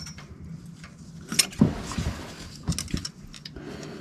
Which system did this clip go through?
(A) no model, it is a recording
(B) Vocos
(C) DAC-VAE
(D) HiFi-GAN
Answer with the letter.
A